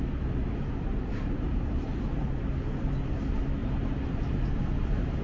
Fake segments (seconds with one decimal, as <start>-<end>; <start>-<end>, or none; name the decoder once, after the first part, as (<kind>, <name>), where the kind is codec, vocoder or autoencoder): 0.4-2.5 (vocoder, BigVGAN v2); 3.6-4.5